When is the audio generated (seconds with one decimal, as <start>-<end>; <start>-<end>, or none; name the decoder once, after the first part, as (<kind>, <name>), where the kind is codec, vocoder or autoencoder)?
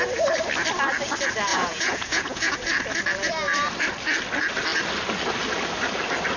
1.5-2.6 (vocoder, Vocos)